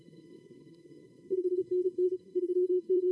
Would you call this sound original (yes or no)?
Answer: no